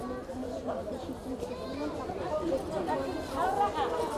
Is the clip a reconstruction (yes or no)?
no